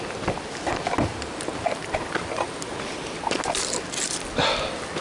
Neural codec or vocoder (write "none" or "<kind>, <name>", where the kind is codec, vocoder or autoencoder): none